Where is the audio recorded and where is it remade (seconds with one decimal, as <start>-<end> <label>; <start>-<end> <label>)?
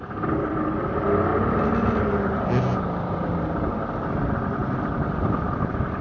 0.0-6.0 recorded